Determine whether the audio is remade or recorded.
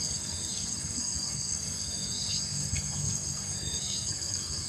remade